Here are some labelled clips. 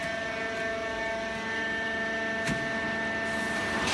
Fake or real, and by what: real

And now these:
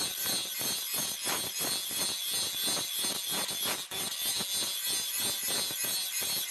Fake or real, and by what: real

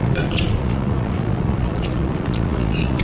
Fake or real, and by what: fake, vocoder, Vocos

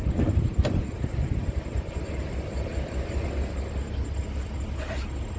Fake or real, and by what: real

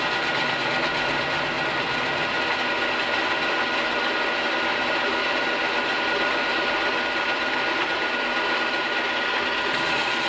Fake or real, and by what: real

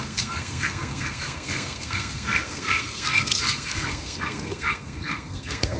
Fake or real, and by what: fake, codec, SNAC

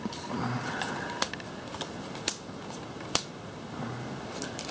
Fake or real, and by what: real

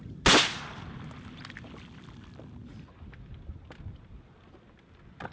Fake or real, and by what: real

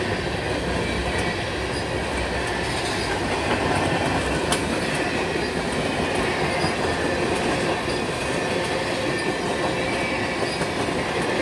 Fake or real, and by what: real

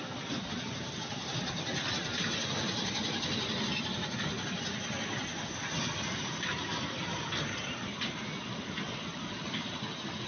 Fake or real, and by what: real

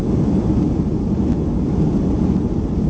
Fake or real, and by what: real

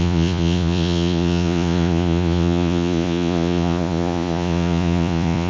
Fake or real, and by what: fake, vocoder, Vocos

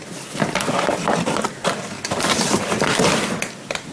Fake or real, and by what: fake, vocoder, BigVGAN v2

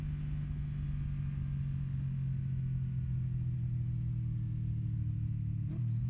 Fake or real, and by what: real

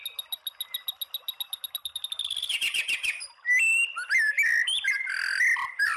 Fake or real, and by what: fake, vocoder, BigVGAN v2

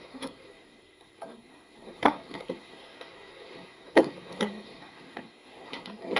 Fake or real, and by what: fake, codec, SNAC